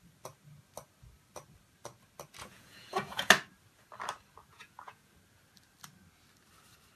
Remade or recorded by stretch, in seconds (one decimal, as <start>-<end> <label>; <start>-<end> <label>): 0.0-2.4 recorded; 2.4-3.3 remade; 3.3-4.5 recorded; 4.5-5.1 remade; 5.1-7.0 recorded